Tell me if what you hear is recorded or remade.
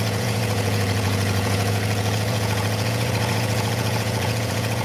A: remade